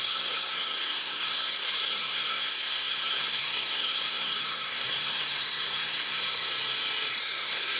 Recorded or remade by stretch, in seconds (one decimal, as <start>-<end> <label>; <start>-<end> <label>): 0.0-6.5 remade; 6.5-7.2 recorded; 7.2-7.8 remade